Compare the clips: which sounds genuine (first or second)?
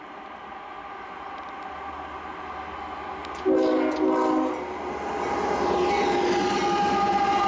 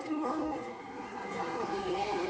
first